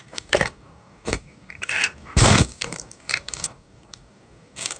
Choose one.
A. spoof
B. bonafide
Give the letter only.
A